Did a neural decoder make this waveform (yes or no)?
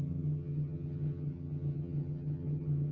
yes